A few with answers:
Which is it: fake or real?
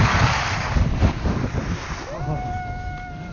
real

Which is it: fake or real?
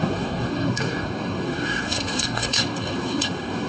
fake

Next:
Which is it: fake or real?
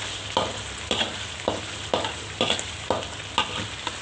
real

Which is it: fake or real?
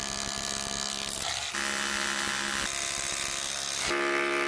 real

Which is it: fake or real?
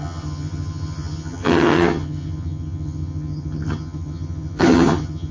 fake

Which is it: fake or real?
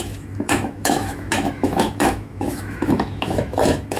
fake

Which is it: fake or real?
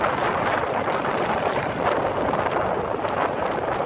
real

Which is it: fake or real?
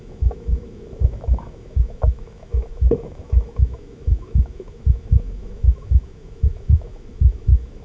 fake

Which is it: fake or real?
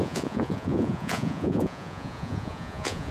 fake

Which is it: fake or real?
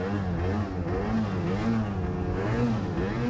real